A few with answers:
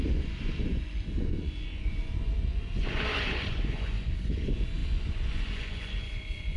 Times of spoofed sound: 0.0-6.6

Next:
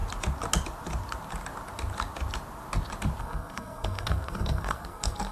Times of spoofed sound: 3.2-5.3

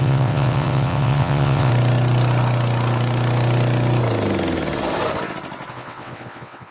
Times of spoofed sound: 0.0-1.7; 5.7-6.7

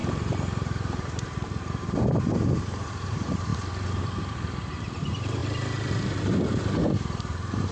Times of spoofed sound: 0.0-3.5; 4.0-7.7

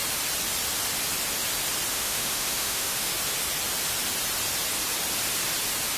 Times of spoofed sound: 1.9-3.1

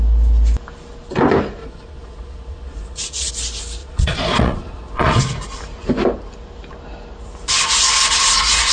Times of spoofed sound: 1.6-3.3; 3.8-5.2

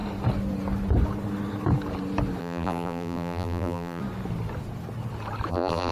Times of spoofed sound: 2.4-4.0; 5.5-5.9